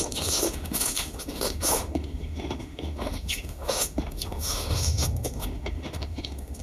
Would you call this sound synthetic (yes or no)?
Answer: yes